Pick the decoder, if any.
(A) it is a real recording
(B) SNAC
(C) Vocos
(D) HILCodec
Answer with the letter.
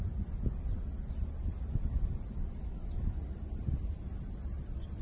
A